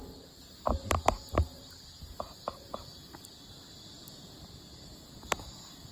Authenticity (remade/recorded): recorded